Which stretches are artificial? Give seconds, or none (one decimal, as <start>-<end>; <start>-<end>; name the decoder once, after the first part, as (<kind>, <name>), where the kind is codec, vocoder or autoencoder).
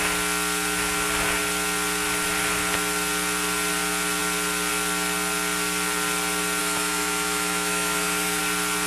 6.6-8.4 (autoencoder, DAC-VAE)